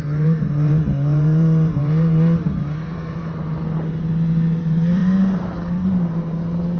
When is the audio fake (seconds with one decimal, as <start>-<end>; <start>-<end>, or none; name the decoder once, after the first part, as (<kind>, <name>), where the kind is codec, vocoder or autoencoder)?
0.0-3.5 (vocoder, BigVGAN v2); 4.6-6.8